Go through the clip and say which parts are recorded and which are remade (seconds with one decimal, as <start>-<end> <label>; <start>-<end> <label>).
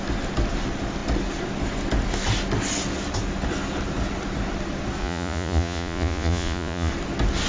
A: 0.0-5.0 recorded; 5.0-6.9 remade; 6.9-7.5 recorded